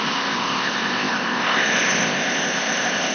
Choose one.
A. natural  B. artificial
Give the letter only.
B